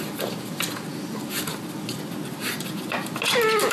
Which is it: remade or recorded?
recorded